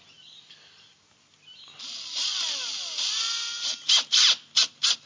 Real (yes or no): yes